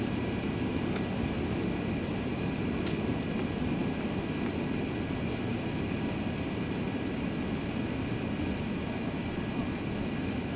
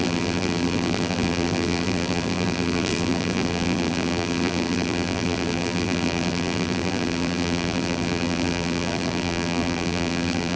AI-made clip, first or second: second